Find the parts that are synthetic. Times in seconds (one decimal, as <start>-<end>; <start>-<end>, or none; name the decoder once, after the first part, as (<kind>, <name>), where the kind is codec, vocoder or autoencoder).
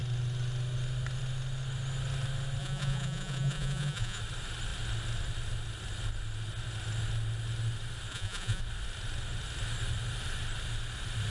2.6-4.2 (vocoder, Vocos); 8.1-8.6